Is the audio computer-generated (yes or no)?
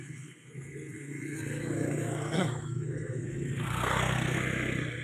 yes